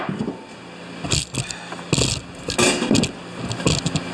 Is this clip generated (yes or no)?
no